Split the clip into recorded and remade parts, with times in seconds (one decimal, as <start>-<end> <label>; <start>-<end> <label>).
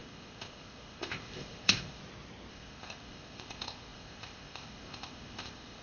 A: 0.0-2.0 remade; 2.0-2.5 recorded; 2.5-5.8 remade